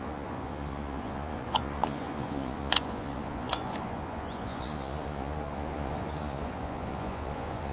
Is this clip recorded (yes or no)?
no